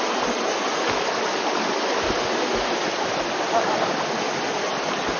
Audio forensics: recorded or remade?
recorded